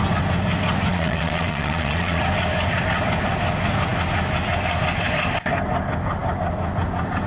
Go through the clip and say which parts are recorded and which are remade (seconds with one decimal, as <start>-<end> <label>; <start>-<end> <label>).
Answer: 0.0-0.9 recorded; 0.9-2.2 remade; 2.2-7.3 recorded